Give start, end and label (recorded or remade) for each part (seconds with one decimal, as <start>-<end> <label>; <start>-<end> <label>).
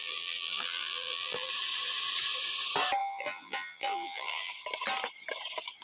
0.0-1.5 remade; 1.5-3.0 recorded; 3.0-4.5 remade; 4.5-5.8 recorded